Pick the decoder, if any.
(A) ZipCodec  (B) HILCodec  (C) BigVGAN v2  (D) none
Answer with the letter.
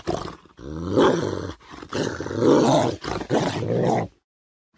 D